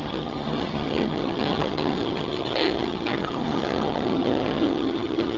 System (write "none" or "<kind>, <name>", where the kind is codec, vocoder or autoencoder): vocoder, HiFi-GAN